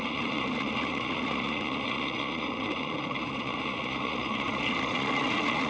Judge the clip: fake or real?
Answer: fake